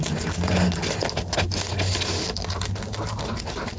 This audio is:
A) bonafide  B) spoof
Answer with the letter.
A